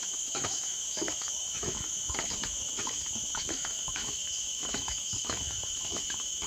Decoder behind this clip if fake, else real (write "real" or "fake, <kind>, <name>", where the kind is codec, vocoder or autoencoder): fake, autoencoder, DAC-VAE